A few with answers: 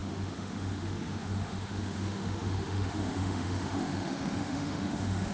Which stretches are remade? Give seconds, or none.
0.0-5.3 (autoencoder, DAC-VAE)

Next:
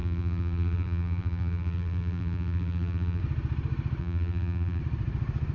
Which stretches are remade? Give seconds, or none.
0.0-3.2 (vocoder, BigVGAN v2); 4.0-4.8